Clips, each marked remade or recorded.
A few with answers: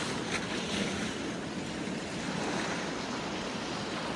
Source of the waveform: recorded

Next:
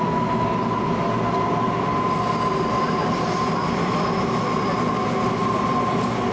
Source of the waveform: recorded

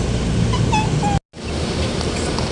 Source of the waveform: recorded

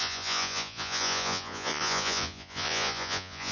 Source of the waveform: remade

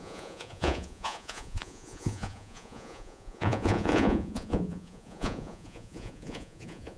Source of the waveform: remade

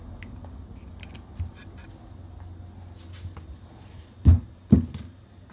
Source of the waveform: recorded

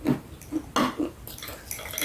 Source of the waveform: recorded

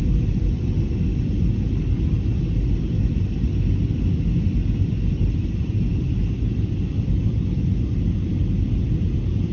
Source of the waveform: recorded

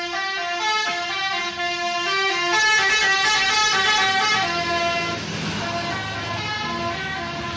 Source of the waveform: recorded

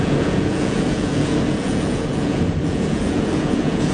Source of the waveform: remade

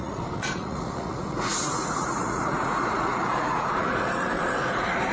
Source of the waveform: remade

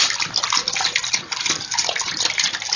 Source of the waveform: recorded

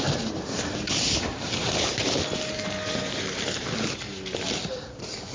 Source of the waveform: recorded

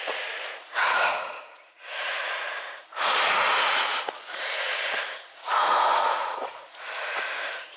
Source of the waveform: remade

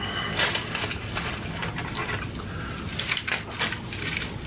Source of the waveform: recorded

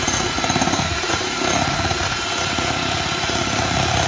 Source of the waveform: remade